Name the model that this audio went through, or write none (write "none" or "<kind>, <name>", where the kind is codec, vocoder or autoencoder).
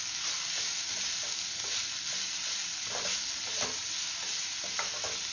none